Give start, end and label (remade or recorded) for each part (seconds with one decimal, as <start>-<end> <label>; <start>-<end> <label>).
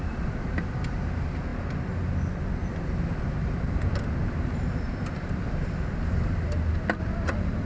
0.0-7.7 recorded